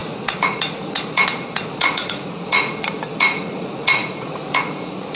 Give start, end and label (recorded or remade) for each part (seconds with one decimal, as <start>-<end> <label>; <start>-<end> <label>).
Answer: 0.0-5.2 remade